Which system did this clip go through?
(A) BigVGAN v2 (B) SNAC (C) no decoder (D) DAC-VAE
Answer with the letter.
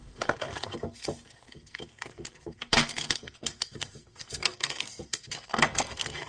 B